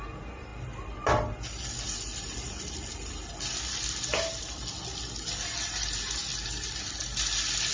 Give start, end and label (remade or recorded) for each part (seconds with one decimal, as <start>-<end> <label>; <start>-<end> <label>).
0.0-7.7 recorded